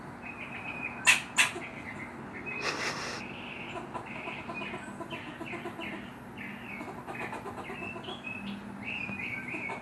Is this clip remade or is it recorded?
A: recorded